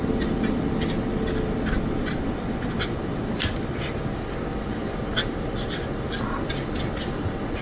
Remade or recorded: recorded